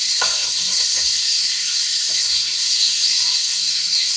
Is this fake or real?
fake